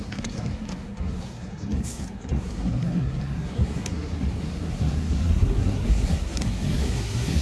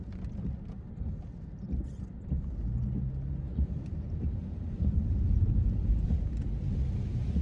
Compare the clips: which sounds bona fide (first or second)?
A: second